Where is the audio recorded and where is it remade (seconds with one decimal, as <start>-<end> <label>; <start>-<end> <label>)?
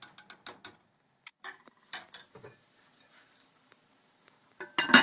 0.0-1.3 recorded; 1.3-4.3 remade; 4.3-5.0 recorded